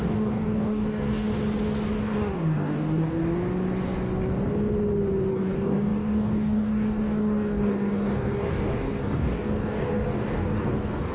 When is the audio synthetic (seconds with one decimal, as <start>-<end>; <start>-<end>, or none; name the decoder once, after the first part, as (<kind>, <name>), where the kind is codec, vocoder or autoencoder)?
0.0-1.3 (codec, DAC); 2.0-3.2; 5.3-11.1